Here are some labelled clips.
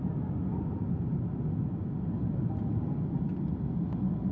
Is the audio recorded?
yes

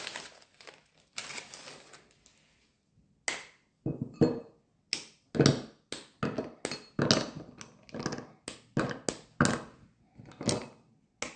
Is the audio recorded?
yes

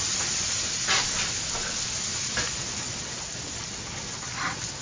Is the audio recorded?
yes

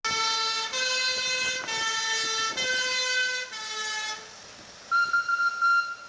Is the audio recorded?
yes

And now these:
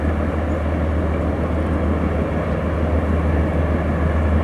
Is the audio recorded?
yes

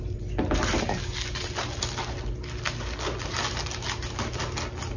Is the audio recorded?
yes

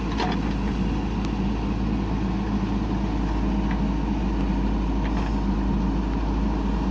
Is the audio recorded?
yes